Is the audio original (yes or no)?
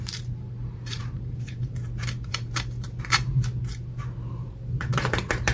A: no